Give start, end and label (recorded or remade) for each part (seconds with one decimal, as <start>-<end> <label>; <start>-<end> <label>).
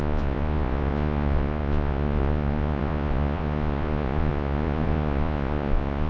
0.0-6.1 remade